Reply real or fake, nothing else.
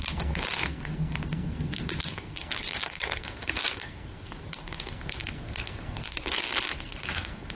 fake